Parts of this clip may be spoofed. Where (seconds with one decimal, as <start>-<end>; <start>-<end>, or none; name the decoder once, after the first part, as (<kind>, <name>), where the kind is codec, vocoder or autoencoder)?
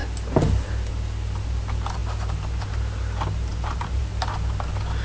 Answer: none